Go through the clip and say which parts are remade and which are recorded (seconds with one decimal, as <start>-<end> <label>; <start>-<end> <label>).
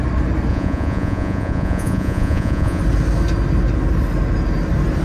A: 0.0-0.5 recorded; 0.5-2.8 remade; 2.8-5.0 recorded